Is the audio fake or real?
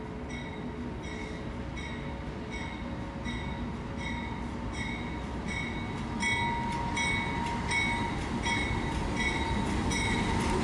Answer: real